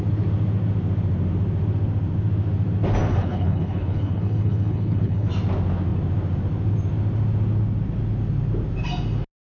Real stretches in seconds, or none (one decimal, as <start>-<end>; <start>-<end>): 0.0-3.1; 5.3-9.5